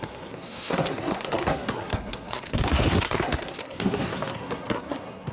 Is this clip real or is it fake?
fake